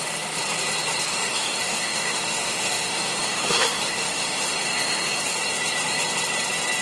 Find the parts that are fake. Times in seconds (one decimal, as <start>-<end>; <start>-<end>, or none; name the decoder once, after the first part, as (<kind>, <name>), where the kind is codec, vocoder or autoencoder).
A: 1.1-5.2 (autoencoder, DAC-VAE)